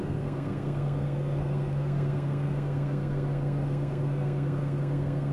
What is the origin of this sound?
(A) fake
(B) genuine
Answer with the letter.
A